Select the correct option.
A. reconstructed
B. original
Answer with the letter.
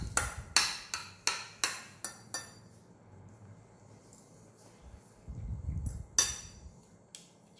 B